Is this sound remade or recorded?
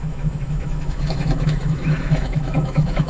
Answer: remade